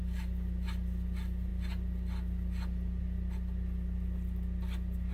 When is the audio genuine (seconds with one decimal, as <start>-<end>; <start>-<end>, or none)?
0.0-5.1